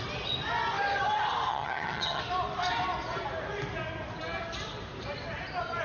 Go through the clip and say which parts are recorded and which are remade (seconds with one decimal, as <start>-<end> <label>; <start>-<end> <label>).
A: 0.0-1.5 recorded; 1.5-2.2 remade; 2.2-5.8 recorded